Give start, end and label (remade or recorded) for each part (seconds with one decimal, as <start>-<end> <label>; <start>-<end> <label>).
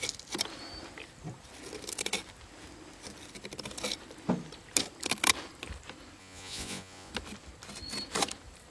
0.0-6.2 recorded; 6.2-7.1 remade; 7.1-8.7 recorded